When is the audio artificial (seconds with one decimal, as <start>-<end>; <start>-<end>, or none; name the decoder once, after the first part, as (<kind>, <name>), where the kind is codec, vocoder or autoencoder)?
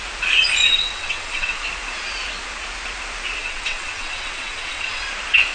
0.6-1.6 (vocoder, WaveNeXt); 3.4-5.0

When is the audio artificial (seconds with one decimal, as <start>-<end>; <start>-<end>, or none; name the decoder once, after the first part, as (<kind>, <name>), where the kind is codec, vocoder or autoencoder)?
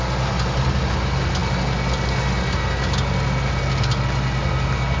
none